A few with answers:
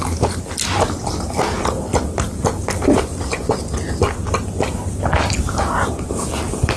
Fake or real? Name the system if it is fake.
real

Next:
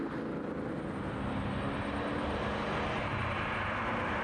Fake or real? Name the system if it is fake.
real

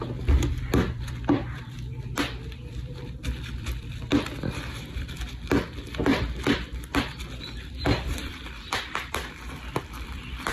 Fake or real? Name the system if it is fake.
fake, vocoder, BigVGAN v2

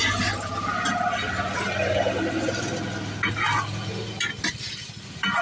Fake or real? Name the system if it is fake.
real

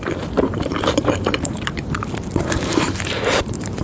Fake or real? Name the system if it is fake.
fake, vocoder, BigVGAN v2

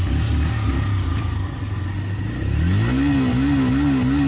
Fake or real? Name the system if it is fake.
real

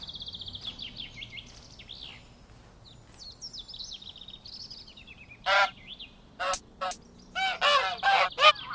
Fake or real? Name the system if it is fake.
real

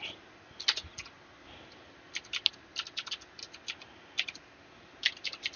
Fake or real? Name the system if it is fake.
real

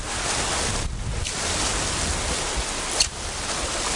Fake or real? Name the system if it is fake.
real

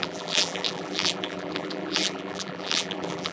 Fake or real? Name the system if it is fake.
fake, vocoder, BigVGAN v2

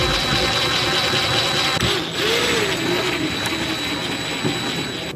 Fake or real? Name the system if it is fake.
real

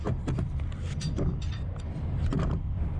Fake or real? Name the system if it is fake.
fake, vocoder, BigVGAN v2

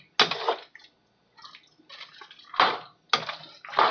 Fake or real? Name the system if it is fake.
real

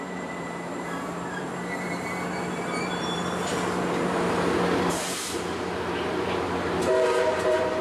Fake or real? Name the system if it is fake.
fake, vocoder, BigVGAN v2